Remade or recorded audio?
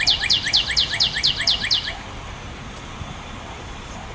recorded